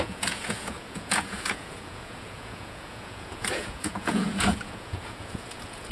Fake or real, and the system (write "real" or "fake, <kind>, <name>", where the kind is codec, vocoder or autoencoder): fake, vocoder, Vocos